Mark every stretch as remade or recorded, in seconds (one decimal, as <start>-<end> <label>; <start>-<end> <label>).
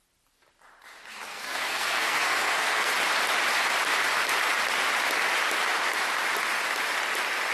0.0-1.3 recorded; 1.3-2.9 remade; 2.9-7.5 recorded